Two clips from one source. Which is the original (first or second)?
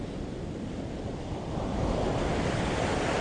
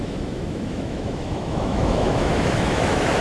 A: first